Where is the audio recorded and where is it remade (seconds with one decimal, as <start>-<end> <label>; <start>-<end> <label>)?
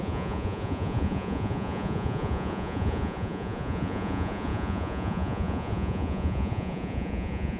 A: 0.0-7.6 remade